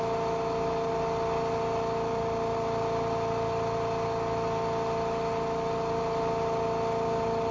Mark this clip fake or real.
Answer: real